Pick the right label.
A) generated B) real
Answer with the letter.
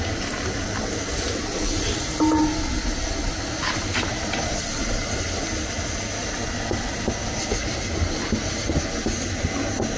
B